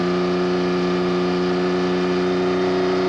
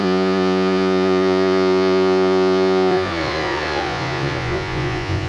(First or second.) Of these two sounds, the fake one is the second